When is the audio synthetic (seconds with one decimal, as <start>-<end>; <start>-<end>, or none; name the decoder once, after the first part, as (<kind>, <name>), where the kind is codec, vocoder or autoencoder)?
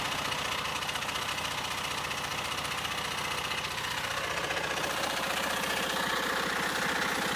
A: none